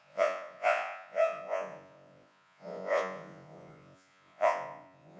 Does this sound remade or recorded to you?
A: remade